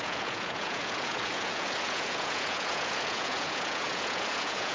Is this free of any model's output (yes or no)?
no